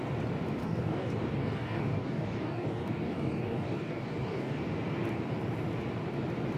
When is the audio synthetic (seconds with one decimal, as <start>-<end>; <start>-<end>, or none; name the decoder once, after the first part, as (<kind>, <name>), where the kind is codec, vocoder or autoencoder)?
0.6-4.6 (codec, DAC)